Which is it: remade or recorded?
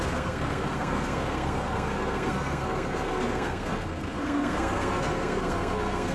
remade